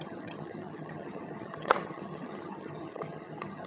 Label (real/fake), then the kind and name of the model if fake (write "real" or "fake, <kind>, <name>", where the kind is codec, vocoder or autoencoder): fake, vocoder, HiFi-GAN